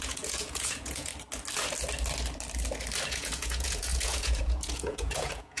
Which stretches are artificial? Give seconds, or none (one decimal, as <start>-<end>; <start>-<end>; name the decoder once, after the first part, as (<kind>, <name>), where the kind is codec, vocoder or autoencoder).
0.0-1.1 (vocoder, Vocos); 3.1-5.6